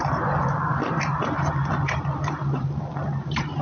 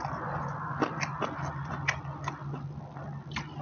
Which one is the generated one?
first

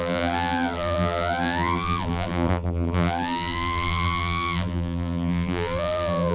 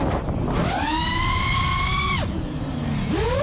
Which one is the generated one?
first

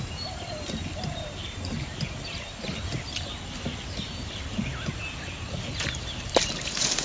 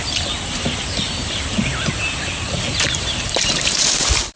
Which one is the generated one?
second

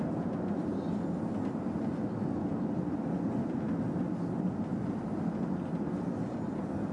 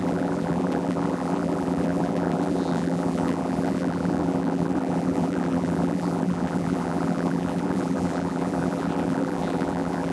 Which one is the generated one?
second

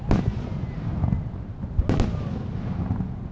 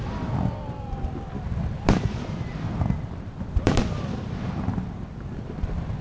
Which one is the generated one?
second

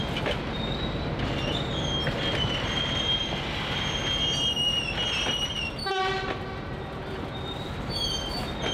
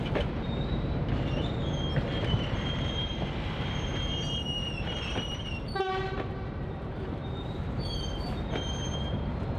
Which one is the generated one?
second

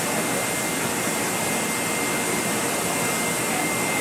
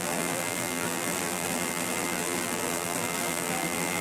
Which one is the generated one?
second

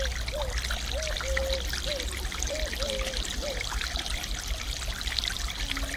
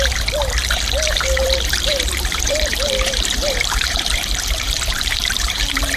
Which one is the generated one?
second